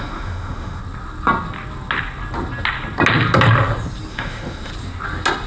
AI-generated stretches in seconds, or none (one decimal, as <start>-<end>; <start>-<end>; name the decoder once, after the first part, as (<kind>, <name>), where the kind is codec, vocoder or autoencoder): 0.0-0.8 (autoencoder, DAC-VAE); 4.1-4.7